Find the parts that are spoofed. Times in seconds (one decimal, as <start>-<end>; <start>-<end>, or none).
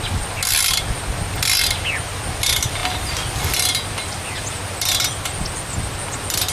none